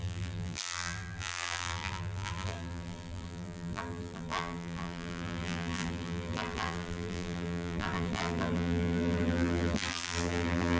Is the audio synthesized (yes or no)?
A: yes